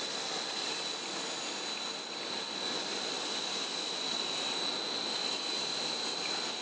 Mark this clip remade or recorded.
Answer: recorded